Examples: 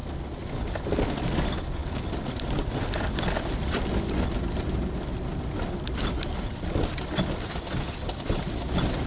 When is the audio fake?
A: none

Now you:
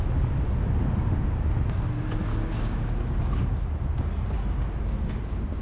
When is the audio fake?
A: 2.3-2.9 (codec, DAC)